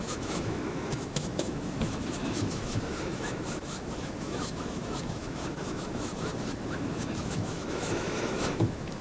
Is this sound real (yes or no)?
no